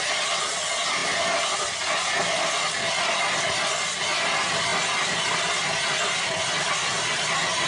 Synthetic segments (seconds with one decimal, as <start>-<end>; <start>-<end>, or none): none